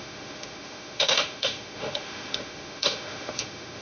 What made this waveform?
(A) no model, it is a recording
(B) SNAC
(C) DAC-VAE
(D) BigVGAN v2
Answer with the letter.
C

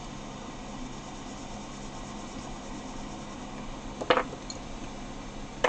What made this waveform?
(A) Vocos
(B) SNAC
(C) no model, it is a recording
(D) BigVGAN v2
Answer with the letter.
C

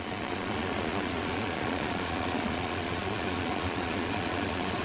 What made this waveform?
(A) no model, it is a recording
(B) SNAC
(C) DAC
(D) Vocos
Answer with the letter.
D